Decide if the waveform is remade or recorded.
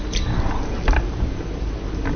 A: recorded